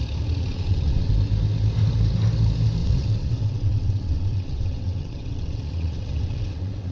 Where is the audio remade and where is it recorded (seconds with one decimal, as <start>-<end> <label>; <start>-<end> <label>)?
0.0-0.5 recorded; 0.5-1.1 remade; 1.1-2.8 recorded; 2.8-6.9 remade